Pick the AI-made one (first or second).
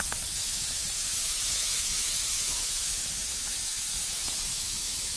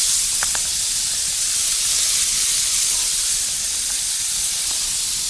first